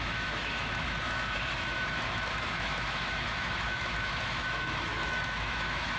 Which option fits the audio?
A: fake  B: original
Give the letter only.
A